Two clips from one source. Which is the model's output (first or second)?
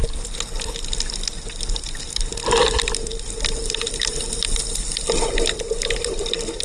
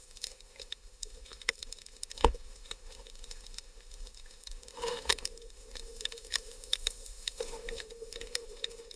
second